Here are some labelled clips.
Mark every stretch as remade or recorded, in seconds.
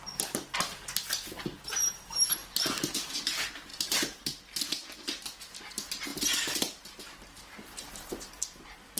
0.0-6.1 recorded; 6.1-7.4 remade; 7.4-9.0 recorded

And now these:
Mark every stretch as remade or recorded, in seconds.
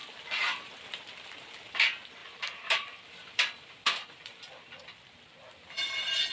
0.0-2.2 recorded; 2.2-4.8 remade; 4.8-6.3 recorded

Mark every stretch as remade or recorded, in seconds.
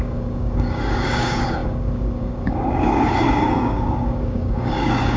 0.0-5.2 remade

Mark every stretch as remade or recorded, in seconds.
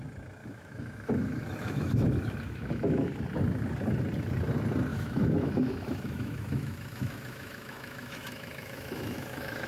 0.0-0.4 recorded; 0.4-3.2 remade; 3.2-4.9 recorded; 4.9-9.7 remade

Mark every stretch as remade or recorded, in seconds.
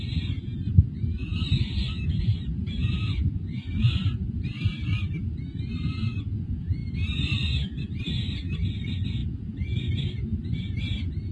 0.0-11.3 recorded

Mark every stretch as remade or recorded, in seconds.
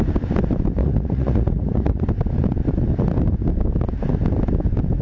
0.0-0.8 recorded; 0.8-2.0 remade; 2.0-5.0 recorded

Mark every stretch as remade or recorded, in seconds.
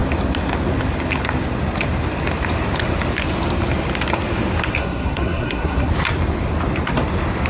0.0-4.8 recorded; 4.8-5.9 remade; 5.9-7.5 recorded